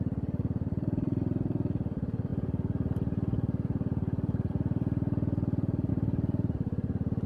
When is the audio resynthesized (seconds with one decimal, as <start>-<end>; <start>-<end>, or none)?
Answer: none